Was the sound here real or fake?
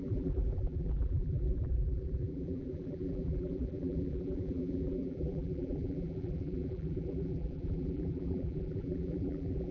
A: fake